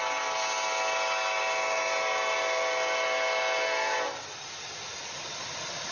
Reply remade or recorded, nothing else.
recorded